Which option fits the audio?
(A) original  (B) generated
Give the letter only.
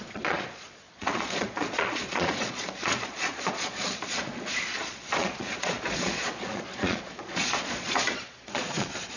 B